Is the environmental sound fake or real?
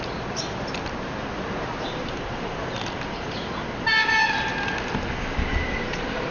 real